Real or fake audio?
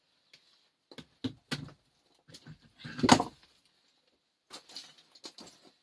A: real